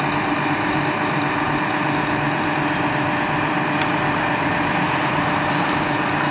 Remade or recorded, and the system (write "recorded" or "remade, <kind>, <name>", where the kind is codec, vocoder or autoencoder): recorded